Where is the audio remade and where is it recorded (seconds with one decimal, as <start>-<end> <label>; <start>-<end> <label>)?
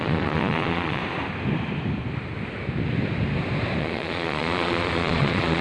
0.0-1.0 remade; 1.0-3.8 recorded; 3.8-5.6 remade